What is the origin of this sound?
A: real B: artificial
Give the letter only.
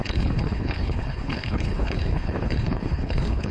B